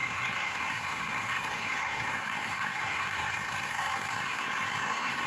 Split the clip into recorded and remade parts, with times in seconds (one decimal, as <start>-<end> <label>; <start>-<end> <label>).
0.0-5.3 remade